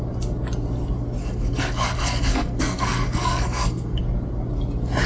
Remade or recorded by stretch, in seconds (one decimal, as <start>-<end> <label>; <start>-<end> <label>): 0.0-1.2 recorded; 1.2-4.0 remade; 4.0-5.1 recorded

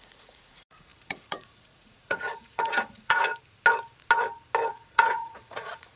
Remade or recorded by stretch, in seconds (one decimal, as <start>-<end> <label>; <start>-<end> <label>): 0.0-3.3 remade; 3.3-4.7 recorded; 4.7-6.0 remade

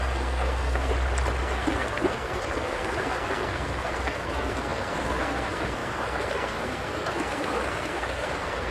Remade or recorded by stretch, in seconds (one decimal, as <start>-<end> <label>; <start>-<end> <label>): 0.0-0.9 remade; 0.9-1.4 recorded; 1.4-8.7 remade

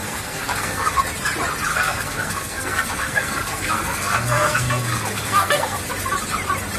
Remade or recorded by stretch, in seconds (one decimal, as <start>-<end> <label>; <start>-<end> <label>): 0.0-1.0 remade; 1.0-1.7 recorded; 1.7-5.8 remade; 5.8-6.8 recorded

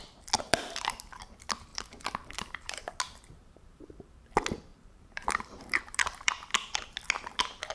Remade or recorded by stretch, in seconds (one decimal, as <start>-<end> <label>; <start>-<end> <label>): 0.0-1.7 recorded; 1.7-2.9 remade; 2.9-3.4 recorded; 3.4-4.2 remade; 4.2-4.7 recorded; 4.7-6.3 remade; 6.3-7.7 recorded

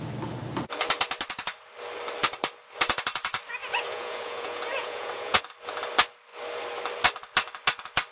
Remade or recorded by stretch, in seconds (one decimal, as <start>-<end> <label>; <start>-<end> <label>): 0.0-3.6 recorded; 3.6-5.4 remade; 5.4-8.1 recorded

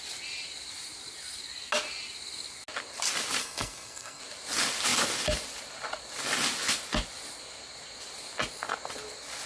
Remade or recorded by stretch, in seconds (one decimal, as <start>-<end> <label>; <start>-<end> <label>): 0.0-3.4 recorded; 3.4-4.2 remade; 4.2-9.5 recorded